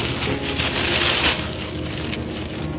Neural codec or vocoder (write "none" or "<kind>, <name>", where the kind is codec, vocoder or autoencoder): none